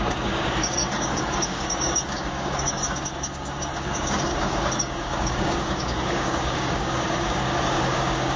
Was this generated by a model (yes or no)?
yes